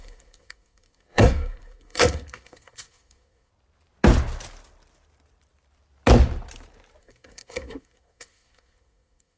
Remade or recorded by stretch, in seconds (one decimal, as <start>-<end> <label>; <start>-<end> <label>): 0.0-3.5 remade; 3.5-7.0 recorded; 7.0-9.4 remade